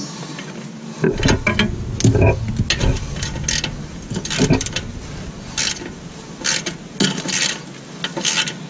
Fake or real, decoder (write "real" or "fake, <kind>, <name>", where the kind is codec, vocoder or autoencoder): real